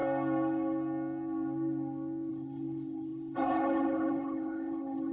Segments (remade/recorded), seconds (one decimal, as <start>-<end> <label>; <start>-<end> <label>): 0.0-2.3 recorded; 2.3-5.1 remade